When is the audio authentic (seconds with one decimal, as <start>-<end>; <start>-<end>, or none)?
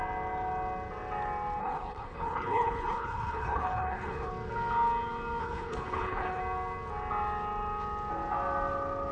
0.0-1.6; 4.3-5.4; 6.4-9.1